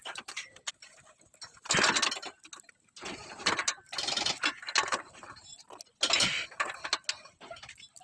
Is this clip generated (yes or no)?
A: no